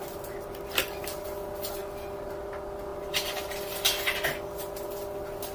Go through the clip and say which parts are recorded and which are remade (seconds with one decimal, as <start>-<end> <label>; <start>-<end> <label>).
0.0-5.5 recorded